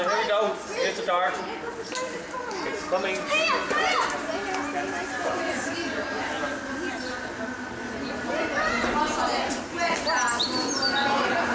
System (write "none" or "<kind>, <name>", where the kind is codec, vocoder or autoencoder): none